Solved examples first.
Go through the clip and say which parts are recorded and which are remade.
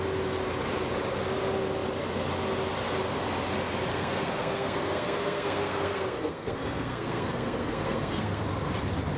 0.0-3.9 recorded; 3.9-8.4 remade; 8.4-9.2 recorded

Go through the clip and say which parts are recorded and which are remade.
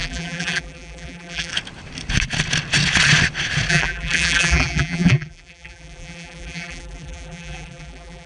0.0-1.5 remade; 1.5-3.7 recorded; 3.7-8.3 remade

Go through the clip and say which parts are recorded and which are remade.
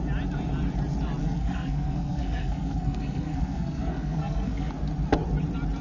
0.0-1.2 recorded; 1.2-4.7 remade; 4.7-5.8 recorded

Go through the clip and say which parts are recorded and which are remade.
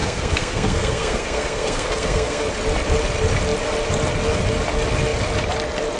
0.0-2.4 remade; 2.4-6.0 recorded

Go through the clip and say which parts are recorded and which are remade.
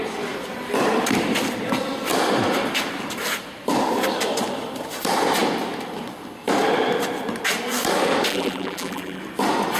0.0-8.3 recorded; 8.3-9.2 remade; 9.2-9.8 recorded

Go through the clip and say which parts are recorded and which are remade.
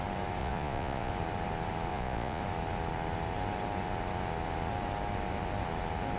0.0-0.4 recorded; 0.4-1.1 remade; 1.1-1.9 recorded; 1.9-2.4 remade; 2.4-6.2 recorded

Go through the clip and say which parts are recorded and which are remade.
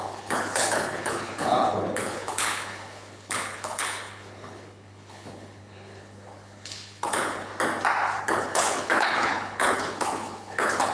0.0-7.5 remade; 7.5-8.2 recorded; 8.2-10.9 remade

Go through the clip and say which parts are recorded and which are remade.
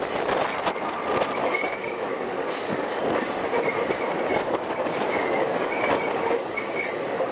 0.0-1.4 recorded; 1.4-3.0 remade; 3.0-4.3 recorded; 4.3-6.8 remade; 6.8-7.3 recorded